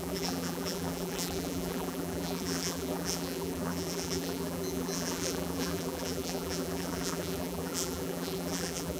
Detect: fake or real fake